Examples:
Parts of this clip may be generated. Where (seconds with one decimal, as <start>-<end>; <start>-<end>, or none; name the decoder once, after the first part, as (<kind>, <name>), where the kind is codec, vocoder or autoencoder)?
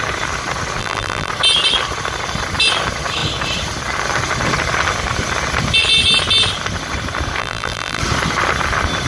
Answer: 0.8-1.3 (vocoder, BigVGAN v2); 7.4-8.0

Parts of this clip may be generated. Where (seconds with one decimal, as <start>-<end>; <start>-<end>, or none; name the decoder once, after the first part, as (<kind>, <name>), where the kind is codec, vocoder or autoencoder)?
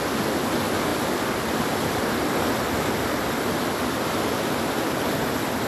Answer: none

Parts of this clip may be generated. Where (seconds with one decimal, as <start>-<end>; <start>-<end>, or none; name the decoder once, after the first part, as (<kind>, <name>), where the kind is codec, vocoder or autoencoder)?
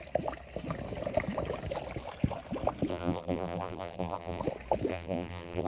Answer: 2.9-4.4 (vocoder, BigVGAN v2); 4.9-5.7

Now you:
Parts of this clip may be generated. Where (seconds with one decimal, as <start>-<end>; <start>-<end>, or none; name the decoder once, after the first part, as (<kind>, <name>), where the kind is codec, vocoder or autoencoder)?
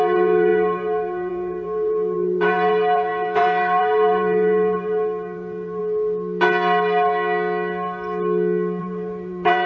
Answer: 0.0-5.8 (vocoder, BigVGAN v2); 8.8-9.7